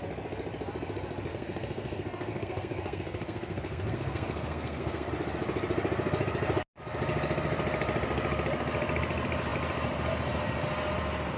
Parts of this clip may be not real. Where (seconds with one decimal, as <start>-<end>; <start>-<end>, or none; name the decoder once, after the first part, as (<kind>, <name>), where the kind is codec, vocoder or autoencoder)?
1.3-5.1 (codec, SNAC)